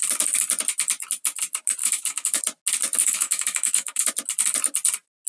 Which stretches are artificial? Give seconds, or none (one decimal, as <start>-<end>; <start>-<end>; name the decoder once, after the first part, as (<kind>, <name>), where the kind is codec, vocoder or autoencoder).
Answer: 1.8-2.4 (autoencoder, DAC-VAE); 3.0-4.1